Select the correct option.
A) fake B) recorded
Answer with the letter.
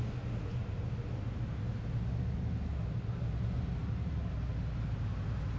B